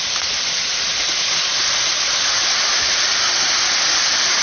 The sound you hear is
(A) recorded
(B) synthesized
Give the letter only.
A